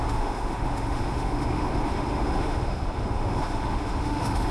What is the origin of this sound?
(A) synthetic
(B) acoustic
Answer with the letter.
A